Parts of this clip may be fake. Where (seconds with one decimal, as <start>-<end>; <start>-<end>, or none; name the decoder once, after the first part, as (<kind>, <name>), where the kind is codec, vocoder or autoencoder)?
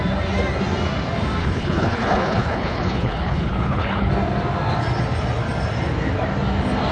1.4-4.1 (codec, HILCodec)